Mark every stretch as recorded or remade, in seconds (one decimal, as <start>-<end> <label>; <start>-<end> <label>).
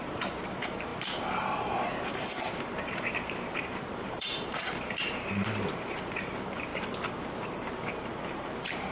0.0-0.9 remade; 0.9-1.6 recorded; 1.6-6.7 remade; 6.7-7.9 recorded; 7.9-8.9 remade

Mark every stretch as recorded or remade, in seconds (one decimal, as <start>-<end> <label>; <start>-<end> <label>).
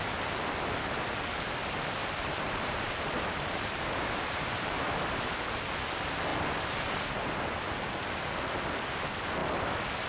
0.0-2.0 recorded; 2.0-4.8 remade; 4.8-10.1 recorded